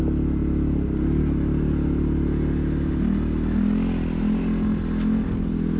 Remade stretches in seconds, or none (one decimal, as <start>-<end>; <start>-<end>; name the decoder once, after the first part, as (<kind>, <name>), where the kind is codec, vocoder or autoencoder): none